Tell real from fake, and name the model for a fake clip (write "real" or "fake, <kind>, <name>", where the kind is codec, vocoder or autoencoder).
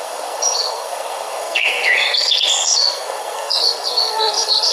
fake, codec, SNAC